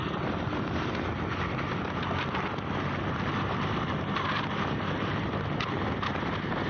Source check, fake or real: real